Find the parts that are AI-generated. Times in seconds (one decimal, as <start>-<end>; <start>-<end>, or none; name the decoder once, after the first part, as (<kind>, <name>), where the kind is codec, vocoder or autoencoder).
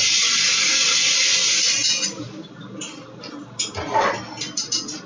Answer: none